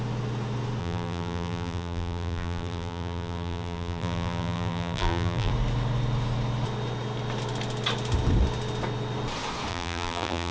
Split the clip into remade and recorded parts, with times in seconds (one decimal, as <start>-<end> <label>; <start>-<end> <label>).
0.0-0.8 recorded; 0.8-5.5 remade; 5.5-9.7 recorded; 9.7-10.5 remade